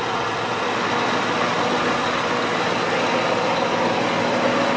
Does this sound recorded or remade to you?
recorded